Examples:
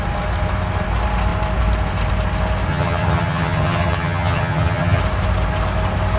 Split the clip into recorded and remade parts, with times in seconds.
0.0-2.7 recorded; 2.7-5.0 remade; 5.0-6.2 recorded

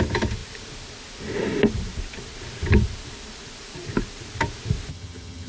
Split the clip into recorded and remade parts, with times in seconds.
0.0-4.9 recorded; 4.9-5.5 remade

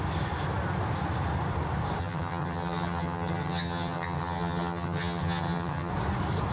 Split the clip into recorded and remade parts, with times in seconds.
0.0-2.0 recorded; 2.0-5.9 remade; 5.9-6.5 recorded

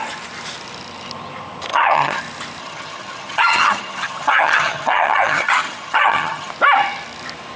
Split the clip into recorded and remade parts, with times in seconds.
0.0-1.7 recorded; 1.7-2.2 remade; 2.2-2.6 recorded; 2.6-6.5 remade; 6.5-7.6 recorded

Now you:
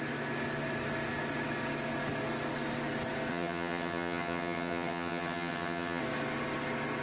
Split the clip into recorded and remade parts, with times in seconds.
0.0-3.3 recorded; 3.3-6.0 remade; 6.0-7.0 recorded

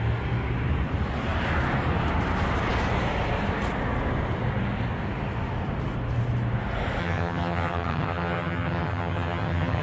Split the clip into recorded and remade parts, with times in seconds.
0.0-7.0 recorded; 7.0-9.8 remade